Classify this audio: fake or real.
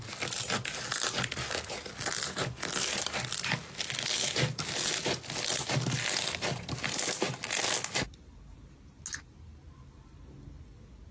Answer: real